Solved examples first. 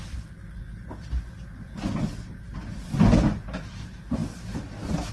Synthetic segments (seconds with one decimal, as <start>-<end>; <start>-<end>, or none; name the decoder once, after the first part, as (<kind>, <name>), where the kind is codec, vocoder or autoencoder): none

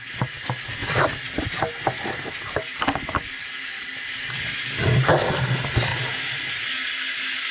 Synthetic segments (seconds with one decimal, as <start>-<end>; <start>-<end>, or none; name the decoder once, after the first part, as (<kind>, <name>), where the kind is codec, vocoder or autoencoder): none

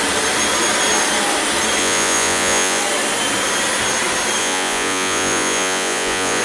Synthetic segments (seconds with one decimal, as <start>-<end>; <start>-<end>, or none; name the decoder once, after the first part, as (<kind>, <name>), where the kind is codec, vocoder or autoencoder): 1.8-2.8 (vocoder, Vocos); 4.4-6.4

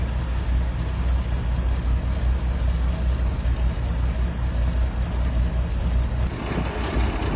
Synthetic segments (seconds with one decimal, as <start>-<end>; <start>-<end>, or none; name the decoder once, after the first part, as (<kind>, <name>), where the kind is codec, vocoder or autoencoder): none

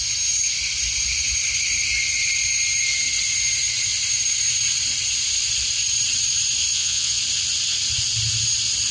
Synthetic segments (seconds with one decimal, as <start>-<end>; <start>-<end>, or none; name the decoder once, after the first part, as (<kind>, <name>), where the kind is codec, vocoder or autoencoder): 6.7-7.2 (vocoder, Vocos)

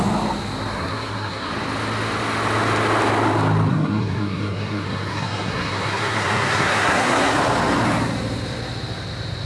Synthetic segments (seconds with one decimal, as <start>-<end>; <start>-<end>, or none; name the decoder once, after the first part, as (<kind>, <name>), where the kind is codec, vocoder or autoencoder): 0.7-1.5 (codec, SNAC); 3.7-7.4

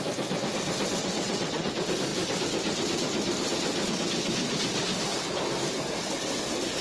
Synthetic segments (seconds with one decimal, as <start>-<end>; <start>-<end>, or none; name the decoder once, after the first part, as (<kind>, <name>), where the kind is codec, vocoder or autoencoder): 1.0-1.7 (vocoder, WaveNeXt)